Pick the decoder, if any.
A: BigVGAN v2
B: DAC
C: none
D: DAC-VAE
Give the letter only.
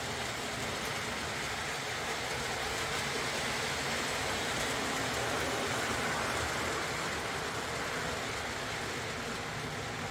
C